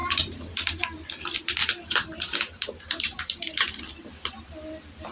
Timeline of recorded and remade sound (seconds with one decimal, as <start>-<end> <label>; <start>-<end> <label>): 0.0-0.8 remade; 0.8-1.6 recorded; 1.6-3.8 remade; 3.8-5.1 recorded